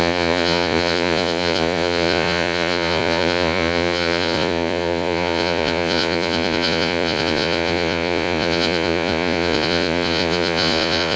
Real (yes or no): no